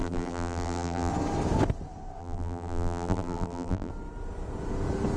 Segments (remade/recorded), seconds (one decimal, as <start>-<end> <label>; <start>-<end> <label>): 0.0-1.1 remade; 1.1-2.2 recorded; 2.2-3.9 remade; 3.9-5.2 recorded

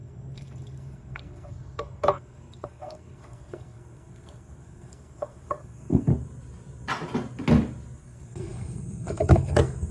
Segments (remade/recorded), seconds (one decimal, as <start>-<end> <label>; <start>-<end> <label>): 0.0-6.1 remade; 6.1-8.0 recorded; 8.0-9.9 remade